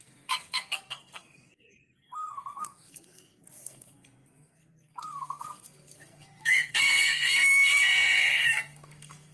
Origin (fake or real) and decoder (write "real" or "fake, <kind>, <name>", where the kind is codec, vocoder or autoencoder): fake, codec, SNAC